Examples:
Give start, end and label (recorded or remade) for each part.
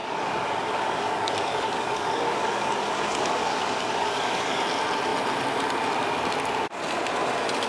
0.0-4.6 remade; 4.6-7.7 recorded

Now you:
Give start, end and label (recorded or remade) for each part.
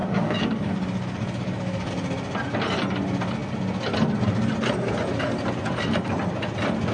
0.0-1.9 remade; 1.9-6.9 recorded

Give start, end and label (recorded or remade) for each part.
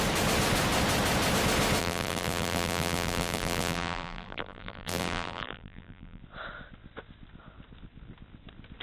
0.0-1.8 recorded; 1.8-6.2 remade; 6.2-8.8 recorded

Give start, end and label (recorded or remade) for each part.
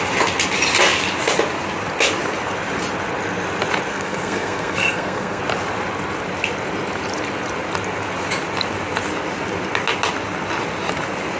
0.0-3.9 recorded; 3.9-5.4 remade; 5.4-11.4 recorded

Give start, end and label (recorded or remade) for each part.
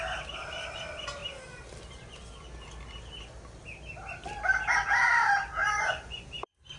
0.0-5.6 recorded; 5.6-6.2 remade; 6.2-6.8 recorded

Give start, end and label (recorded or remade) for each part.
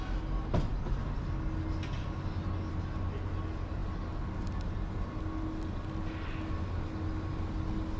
0.0-8.0 recorded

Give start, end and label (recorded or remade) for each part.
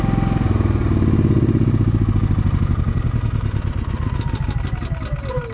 0.0-5.5 recorded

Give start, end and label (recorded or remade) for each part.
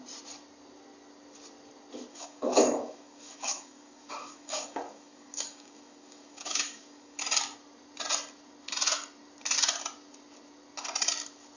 0.0-2.1 recorded; 2.1-7.2 remade; 7.2-11.6 recorded